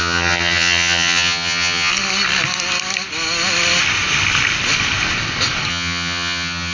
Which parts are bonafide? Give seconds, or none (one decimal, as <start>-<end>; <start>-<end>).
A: 1.9-5.7